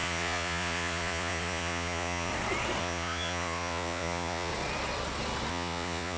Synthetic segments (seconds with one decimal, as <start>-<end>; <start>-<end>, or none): 0.0-2.3; 2.8-4.5; 5.5-6.2

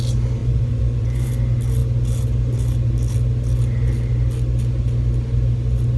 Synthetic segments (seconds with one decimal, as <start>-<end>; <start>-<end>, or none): 0.4-1.3